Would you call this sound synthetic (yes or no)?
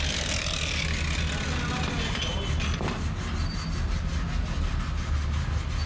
no